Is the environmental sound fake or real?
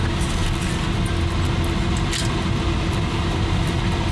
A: real